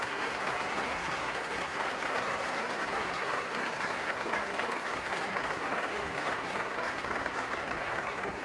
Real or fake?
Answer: fake